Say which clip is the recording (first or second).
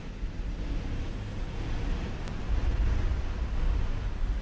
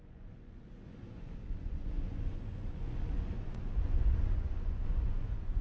first